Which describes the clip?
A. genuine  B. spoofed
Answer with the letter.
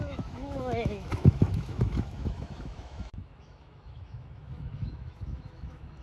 B